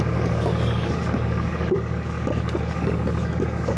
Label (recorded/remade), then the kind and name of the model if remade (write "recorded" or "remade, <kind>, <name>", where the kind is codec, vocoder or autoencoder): remade, codec, DAC